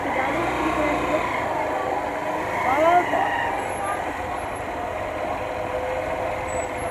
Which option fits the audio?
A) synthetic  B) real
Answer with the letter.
B